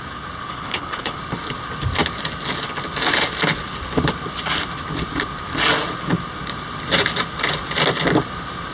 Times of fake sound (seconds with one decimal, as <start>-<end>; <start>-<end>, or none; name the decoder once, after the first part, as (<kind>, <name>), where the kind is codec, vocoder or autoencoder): 0.5-1.2 (codec, HILCodec)